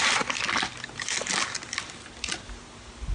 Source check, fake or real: real